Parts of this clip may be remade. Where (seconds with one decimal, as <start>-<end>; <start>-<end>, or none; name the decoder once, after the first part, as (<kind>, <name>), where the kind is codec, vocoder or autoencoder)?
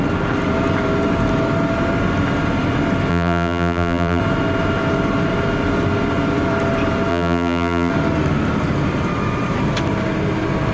3.1-4.2 (vocoder, BigVGAN v2); 7.1-7.9